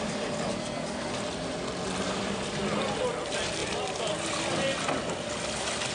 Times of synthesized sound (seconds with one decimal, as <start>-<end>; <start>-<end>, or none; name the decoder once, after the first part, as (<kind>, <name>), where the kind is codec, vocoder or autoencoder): 0.5-1.1 (codec, SNAC)